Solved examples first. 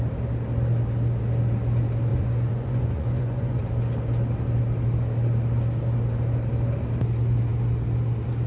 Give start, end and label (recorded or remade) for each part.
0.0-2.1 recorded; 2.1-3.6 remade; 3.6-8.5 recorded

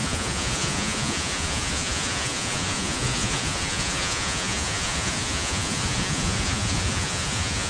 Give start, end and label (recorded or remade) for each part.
0.0-7.7 remade

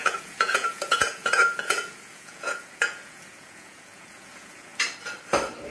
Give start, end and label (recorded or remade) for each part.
0.0-4.7 remade; 4.7-5.7 recorded

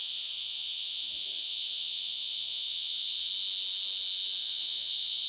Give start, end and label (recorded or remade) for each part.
0.0-3.3 remade; 3.3-4.4 recorded; 4.4-5.3 remade

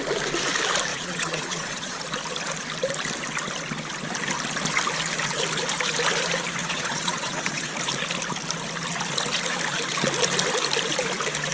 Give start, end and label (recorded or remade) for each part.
0.0-0.9 recorded; 0.9-2.0 remade; 2.0-6.6 recorded; 6.6-7.7 remade; 7.7-11.5 recorded

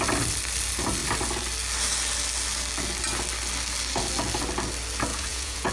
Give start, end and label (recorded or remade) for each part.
0.0-5.1 recorded; 5.1-5.7 remade

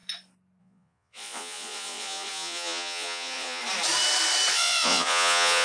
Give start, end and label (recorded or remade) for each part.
0.0-0.6 recorded; 0.6-3.6 remade; 3.6-4.5 recorded; 4.5-5.6 remade